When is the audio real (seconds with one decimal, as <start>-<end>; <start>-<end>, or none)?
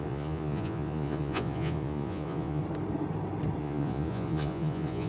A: 2.6-3.6